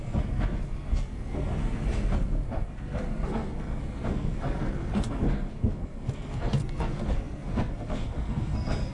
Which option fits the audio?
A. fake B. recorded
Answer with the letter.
A